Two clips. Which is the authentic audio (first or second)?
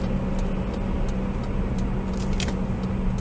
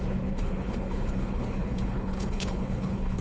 first